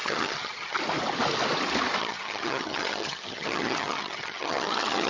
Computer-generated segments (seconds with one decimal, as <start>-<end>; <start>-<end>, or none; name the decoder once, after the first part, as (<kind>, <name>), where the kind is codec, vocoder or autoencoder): 0.0-0.8 (vocoder, HiFi-GAN); 2.0-5.1